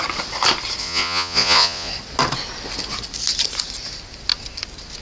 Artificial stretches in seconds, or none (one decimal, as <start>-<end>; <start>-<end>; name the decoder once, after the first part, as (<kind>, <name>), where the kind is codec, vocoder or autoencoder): 0.8-1.9 (vocoder, Vocos)